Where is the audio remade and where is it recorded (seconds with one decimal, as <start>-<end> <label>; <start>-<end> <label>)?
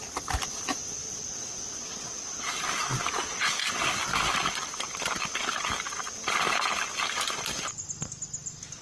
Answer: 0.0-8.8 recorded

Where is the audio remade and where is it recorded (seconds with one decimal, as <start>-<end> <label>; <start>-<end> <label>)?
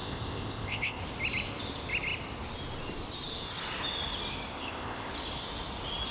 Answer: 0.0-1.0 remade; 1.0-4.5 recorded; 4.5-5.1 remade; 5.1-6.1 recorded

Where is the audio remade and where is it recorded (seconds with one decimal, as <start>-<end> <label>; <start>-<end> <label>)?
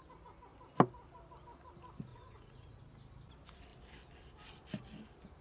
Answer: 0.0-2.1 recorded; 2.1-2.8 remade; 2.8-5.4 recorded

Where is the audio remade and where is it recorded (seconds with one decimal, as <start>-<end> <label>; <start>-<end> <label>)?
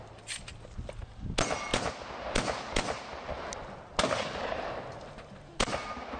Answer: 0.0-6.2 recorded